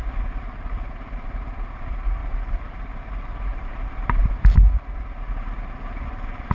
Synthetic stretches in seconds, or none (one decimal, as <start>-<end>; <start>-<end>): 0.0-2.2; 2.7-6.5